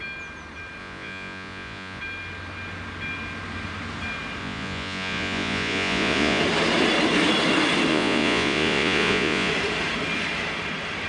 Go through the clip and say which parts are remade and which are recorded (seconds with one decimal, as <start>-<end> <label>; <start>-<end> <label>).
0.0-0.8 recorded; 0.8-2.0 remade; 2.0-4.4 recorded; 4.4-6.4 remade; 6.4-7.9 recorded; 7.9-9.5 remade; 9.5-11.1 recorded